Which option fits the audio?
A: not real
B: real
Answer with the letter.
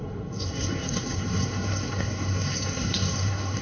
A